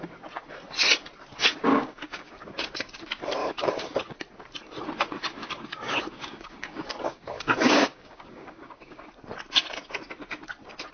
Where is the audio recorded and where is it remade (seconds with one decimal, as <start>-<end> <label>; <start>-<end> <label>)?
0.0-1.7 recorded; 1.7-3.0 remade; 3.0-3.4 recorded; 3.4-4.0 remade; 4.0-5.4 recorded; 5.4-9.0 remade; 9.0-10.9 recorded

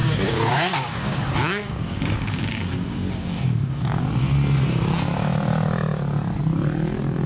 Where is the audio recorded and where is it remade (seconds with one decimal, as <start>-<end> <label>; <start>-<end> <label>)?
0.0-4.0 remade; 4.0-7.3 recorded

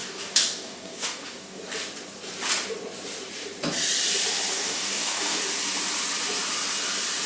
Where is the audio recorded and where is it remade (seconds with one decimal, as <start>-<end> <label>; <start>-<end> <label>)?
0.0-1.6 remade; 1.6-4.5 recorded; 4.5-5.4 remade; 5.4-7.3 recorded

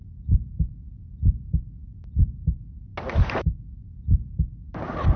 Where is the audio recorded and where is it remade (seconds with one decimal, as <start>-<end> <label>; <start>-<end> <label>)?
0.0-5.2 recorded

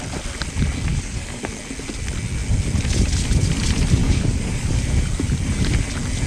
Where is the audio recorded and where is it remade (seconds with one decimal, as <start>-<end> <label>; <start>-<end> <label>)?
0.0-0.9 recorded; 0.9-1.4 remade; 1.4-4.0 recorded; 4.0-4.8 remade; 4.8-6.3 recorded

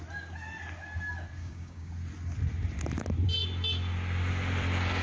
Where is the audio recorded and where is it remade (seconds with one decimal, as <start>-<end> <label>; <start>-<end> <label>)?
0.0-1.4 recorded; 1.4-1.9 remade; 1.9-5.0 recorded

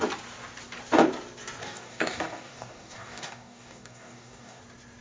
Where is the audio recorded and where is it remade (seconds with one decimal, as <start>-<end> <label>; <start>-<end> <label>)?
0.0-1.6 recorded; 1.6-4.6 remade; 4.6-5.0 recorded

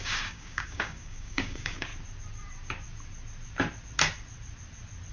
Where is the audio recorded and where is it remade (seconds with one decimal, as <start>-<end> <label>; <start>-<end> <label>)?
0.0-1.9 remade; 1.9-5.1 recorded